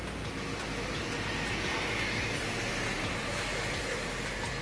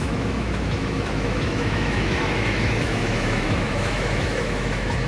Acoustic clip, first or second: first